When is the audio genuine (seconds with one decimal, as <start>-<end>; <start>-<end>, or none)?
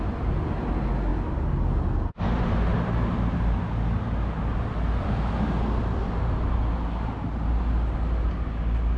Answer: 0.0-9.0